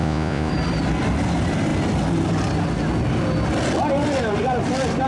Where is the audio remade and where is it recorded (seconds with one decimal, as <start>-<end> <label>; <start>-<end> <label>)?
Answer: 0.0-0.5 remade; 0.5-5.1 recorded